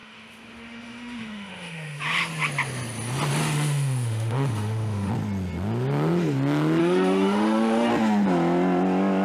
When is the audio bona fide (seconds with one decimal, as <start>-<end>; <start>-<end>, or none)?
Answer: 2.0-3.4; 5.1-6.8; 7.9-9.2